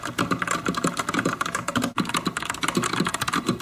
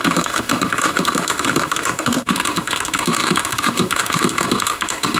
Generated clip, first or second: second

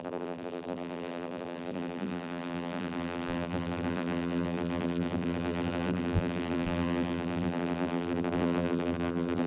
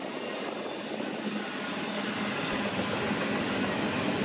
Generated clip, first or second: first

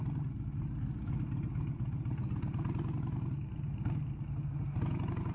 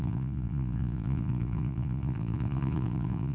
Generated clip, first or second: second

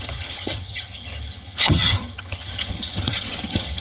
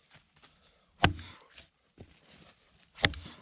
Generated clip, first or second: first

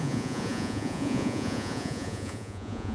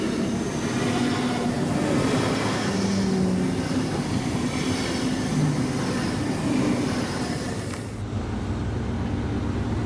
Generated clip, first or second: first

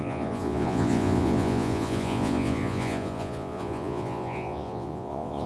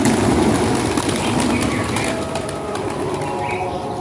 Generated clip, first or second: first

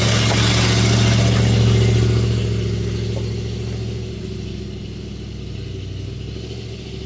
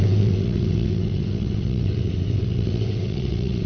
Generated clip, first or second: second